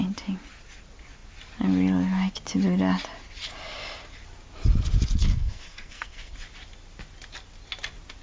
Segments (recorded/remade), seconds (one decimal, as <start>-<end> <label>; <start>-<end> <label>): 0.0-5.2 recorded; 5.2-6.3 remade; 6.3-8.2 recorded